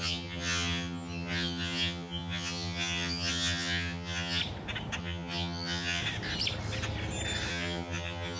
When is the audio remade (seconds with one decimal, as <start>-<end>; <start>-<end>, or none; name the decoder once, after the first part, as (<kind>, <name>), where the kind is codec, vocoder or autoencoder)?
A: 0.0-4.4 (vocoder, HiFi-GAN); 5.0-6.0; 7.5-8.4